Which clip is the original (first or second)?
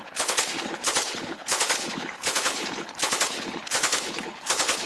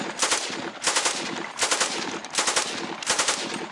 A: second